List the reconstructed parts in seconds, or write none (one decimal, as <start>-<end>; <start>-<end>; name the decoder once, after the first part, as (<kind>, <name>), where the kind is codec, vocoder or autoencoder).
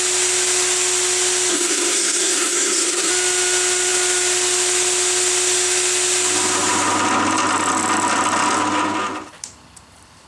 1.5-3.1 (codec, SNAC)